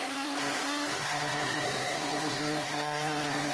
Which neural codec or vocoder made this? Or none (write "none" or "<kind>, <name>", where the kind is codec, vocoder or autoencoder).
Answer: codec, SNAC